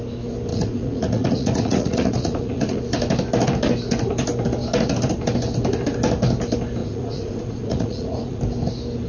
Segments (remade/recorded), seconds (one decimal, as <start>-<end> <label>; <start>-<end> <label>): 0.0-0.5 recorded; 0.5-2.8 remade; 2.8-6.8 recorded; 6.8-8.4 remade; 8.4-9.1 recorded